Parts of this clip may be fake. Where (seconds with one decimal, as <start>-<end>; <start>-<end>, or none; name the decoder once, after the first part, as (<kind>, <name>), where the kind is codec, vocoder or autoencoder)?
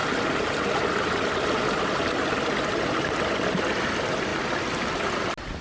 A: none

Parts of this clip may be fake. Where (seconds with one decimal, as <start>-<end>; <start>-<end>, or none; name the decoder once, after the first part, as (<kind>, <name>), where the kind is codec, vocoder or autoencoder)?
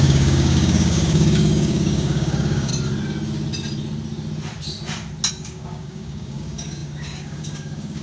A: 0.0-2.7 (codec, DAC); 5.3-8.0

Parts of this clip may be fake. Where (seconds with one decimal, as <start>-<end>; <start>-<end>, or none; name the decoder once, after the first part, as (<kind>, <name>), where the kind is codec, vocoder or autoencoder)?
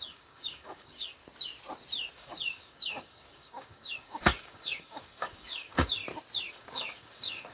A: 0.0-1.2 (codec, DAC); 2.1-6.0; 6.5-7.5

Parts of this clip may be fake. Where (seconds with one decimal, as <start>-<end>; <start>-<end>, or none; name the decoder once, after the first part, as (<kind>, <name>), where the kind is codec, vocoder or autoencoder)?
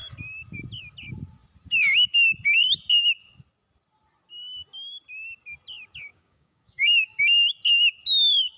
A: 6.1-7.2 (codec, DAC)